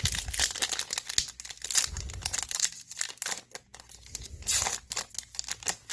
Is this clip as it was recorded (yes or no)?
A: yes